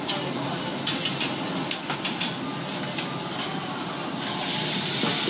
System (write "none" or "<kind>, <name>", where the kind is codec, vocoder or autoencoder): none